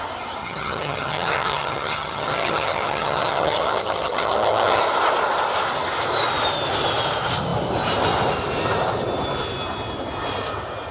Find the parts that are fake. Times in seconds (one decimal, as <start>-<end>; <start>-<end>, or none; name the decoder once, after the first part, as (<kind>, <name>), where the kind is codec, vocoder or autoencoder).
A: 0.4-4.8 (vocoder, HiFi-GAN)